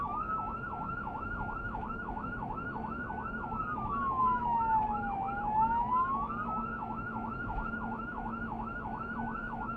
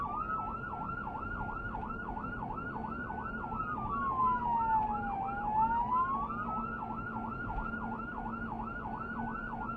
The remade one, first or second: first